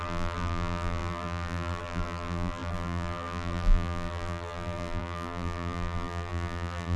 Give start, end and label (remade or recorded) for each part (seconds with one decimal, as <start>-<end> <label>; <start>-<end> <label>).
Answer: 0.0-7.0 remade